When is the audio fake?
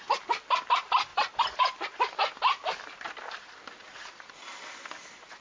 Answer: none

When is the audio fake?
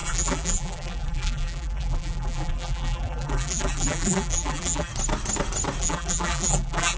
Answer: 0.0-4.9; 5.8-7.0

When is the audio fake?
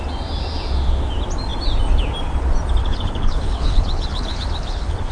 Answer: 2.8-5.1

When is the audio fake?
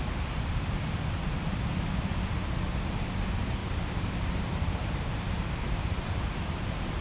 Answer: 3.6-7.0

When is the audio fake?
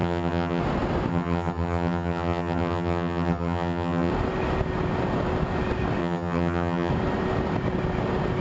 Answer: 0.0-0.6; 1.1-4.1; 6.0-6.9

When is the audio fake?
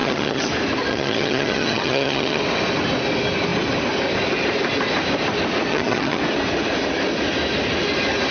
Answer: 0.0-0.5; 0.9-2.4; 5.7-6.2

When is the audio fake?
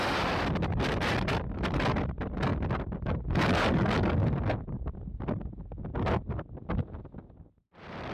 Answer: none